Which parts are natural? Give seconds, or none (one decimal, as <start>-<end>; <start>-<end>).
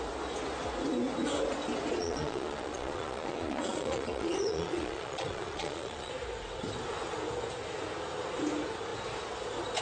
0.0-2.0; 6.1-9.8